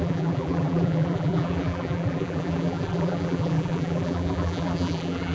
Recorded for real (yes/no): no